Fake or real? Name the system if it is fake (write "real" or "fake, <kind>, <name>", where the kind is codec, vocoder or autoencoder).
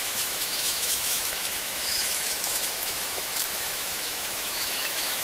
fake, autoencoder, DAC-VAE